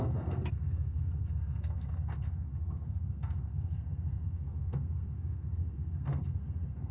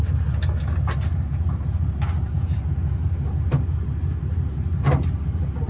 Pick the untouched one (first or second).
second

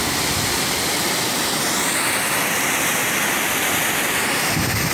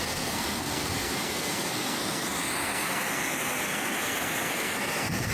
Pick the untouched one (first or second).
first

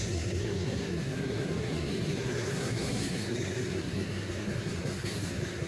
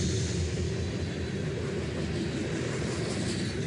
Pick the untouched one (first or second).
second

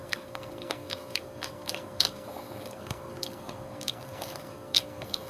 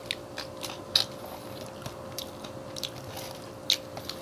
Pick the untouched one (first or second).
second